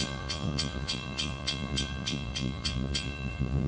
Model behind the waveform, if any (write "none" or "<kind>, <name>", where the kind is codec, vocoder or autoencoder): vocoder, Vocos